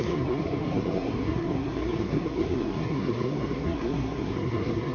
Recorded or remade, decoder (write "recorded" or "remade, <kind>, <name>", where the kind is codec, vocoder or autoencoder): remade, codec, SNAC